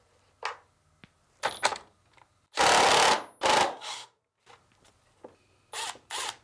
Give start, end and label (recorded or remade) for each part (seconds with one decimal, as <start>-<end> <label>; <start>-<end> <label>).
0.0-3.7 recorded; 3.7-4.2 remade; 4.2-6.4 recorded